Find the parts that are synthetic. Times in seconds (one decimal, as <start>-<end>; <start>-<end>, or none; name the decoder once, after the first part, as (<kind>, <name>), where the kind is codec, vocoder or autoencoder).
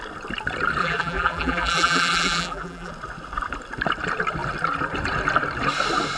0.8-2.9 (vocoder, BigVGAN v2)